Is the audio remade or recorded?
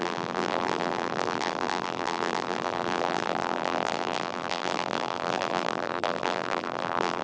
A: remade